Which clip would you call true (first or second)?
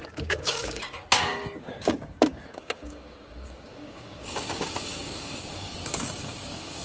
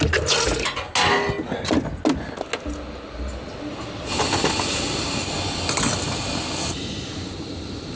second